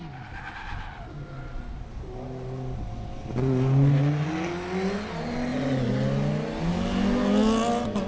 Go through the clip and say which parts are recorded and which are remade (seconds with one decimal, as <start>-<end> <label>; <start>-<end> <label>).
0.0-8.1 recorded

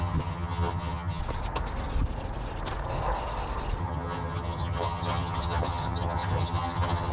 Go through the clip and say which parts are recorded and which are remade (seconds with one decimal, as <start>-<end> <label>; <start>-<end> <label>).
0.0-1.2 remade; 1.2-3.8 recorded; 3.8-7.1 remade

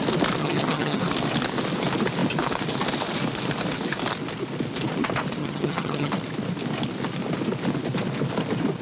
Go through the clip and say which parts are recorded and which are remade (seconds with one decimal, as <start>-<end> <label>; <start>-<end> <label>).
0.0-0.4 recorded; 0.4-1.0 remade; 1.0-5.4 recorded; 5.4-6.1 remade; 6.1-8.8 recorded

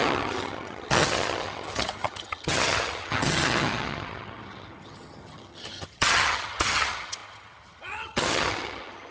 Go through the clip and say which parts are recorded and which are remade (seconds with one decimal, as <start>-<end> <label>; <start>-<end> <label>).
0.0-9.1 remade

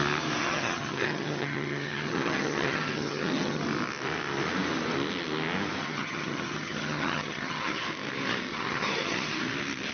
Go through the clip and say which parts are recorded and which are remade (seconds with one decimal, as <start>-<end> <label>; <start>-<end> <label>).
0.0-0.4 recorded; 0.4-3.6 remade; 3.6-5.8 recorded; 5.8-7.8 remade; 7.8-8.5 recorded; 8.5-9.4 remade; 9.4-9.9 recorded

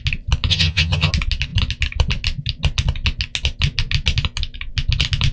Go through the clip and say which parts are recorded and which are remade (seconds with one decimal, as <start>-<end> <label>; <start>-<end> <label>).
0.0-0.5 recorded; 0.5-1.1 remade; 1.1-5.3 recorded

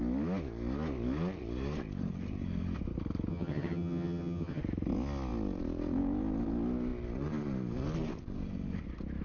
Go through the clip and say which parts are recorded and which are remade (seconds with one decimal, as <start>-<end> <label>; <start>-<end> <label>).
0.0-3.3 recorded; 3.3-4.6 remade; 4.6-9.2 recorded